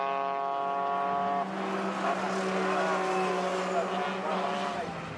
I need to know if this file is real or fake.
real